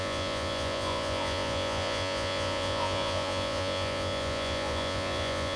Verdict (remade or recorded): remade